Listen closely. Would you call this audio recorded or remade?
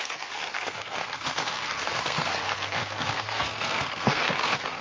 remade